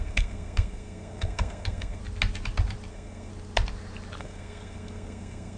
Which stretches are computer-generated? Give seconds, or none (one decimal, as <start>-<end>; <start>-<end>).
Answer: 0.0-2.0; 2.9-3.3; 4.2-5.6